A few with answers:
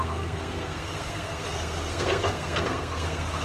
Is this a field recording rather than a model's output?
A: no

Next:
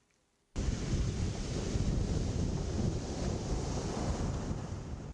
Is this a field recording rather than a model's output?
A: no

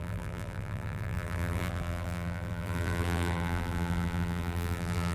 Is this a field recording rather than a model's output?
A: no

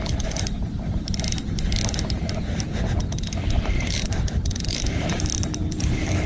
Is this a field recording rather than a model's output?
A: yes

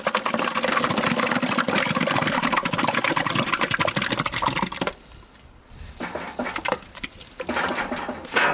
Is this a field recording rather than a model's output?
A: yes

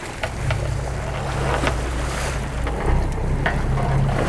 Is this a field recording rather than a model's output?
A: yes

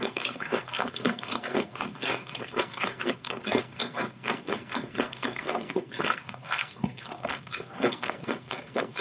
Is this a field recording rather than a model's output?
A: no